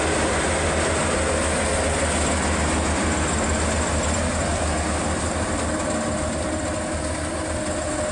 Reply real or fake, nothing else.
real